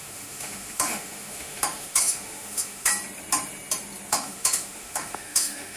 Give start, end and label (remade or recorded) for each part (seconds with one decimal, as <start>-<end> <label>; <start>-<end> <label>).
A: 0.0-2.9 remade; 2.9-4.1 recorded; 4.1-5.8 remade